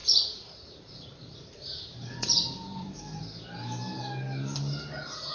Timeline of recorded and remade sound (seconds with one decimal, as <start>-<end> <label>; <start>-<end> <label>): 0.0-3.2 remade; 3.2-5.3 recorded